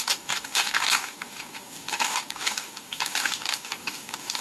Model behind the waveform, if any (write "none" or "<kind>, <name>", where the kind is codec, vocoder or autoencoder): codec, DAC